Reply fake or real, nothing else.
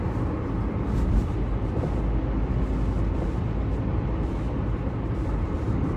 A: real